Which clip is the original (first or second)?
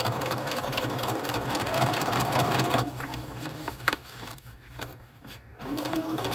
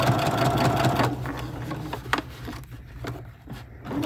second